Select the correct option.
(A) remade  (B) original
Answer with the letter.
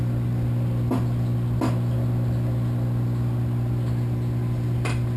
B